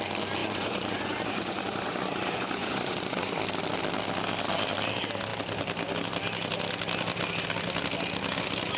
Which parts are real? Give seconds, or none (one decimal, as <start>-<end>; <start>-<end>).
0.0-0.4; 3.4-8.8